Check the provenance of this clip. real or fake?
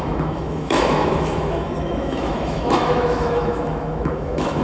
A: fake